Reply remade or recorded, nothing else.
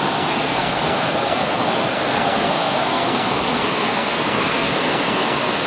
remade